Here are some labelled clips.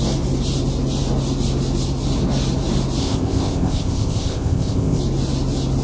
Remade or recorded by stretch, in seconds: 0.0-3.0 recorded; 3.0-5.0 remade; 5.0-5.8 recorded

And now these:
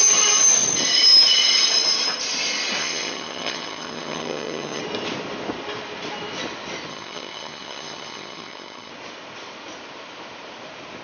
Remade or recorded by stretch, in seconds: 0.0-2.8 recorded; 2.8-4.8 remade; 4.8-6.9 recorded; 6.9-8.9 remade; 8.9-11.0 recorded

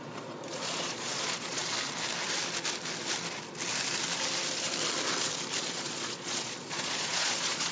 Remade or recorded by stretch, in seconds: 0.0-1.6 remade; 1.6-5.6 recorded; 5.6-7.7 remade

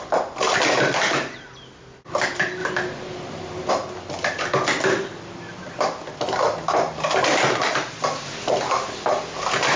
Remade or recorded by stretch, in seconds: 0.0-9.8 recorded

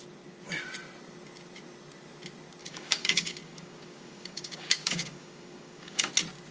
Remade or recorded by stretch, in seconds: 0.0-2.6 recorded; 2.6-6.1 remade; 6.1-6.5 recorded

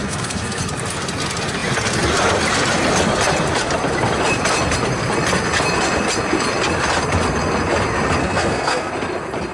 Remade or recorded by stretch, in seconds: 0.0-0.6 remade; 0.6-8.2 recorded; 8.2-8.9 remade; 8.9-9.5 recorded

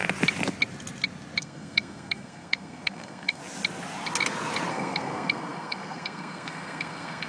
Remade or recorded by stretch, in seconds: 0.0-1.4 recorded; 1.4-3.4 remade; 3.4-4.7 recorded; 4.7-7.3 remade

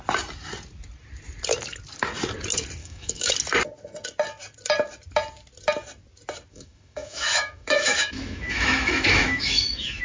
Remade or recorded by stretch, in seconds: 0.0-2.8 recorded; 2.8-3.3 remade; 3.3-6.5 recorded; 6.5-10.0 remade